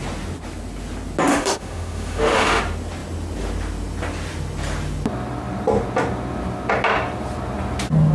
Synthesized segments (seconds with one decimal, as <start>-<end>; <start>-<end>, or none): 1.3-2.6